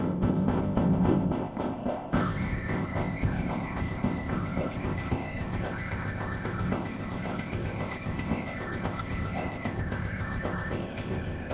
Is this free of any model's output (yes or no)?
no